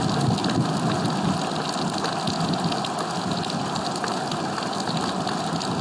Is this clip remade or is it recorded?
recorded